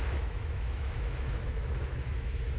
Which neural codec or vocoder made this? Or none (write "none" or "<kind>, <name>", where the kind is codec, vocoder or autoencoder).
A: autoencoder, DAC-VAE